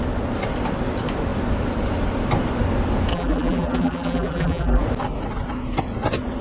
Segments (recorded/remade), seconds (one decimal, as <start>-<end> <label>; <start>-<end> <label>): 0.0-3.1 recorded; 3.1-4.8 remade; 4.8-6.4 recorded